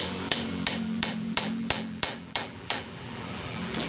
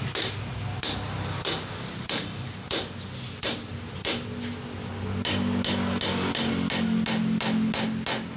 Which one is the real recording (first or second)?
second